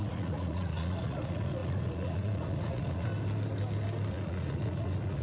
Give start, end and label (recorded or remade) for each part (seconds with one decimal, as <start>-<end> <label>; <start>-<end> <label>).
0.0-3.1 remade; 3.1-4.1 recorded; 4.1-5.2 remade